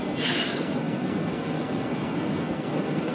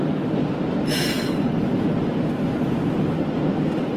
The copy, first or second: first